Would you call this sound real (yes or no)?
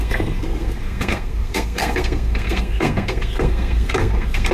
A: no